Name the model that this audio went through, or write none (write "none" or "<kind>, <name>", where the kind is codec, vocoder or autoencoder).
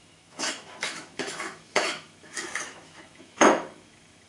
autoencoder, DAC-VAE